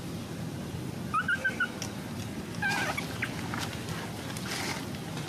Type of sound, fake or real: real